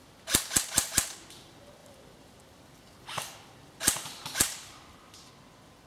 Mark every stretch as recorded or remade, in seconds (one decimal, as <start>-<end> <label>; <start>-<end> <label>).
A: 0.0-1.8 recorded; 1.8-5.3 remade; 5.3-5.9 recorded